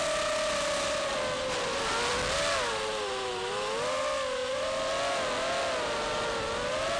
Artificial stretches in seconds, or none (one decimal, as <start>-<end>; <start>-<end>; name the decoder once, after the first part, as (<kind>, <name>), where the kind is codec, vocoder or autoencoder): none